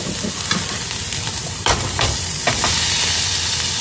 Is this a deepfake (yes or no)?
no